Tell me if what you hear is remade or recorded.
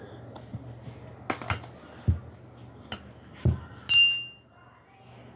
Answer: recorded